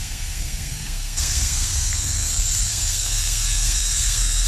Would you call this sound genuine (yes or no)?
no